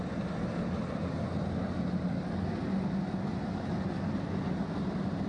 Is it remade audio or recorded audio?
recorded